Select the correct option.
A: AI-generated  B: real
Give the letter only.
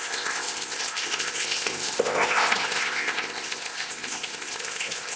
A